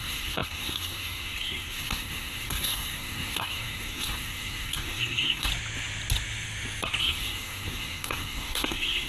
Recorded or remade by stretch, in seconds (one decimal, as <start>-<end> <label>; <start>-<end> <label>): 0.0-5.5 remade; 5.5-7.0 recorded; 7.0-9.1 remade